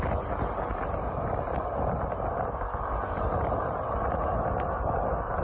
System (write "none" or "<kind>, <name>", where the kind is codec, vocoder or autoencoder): none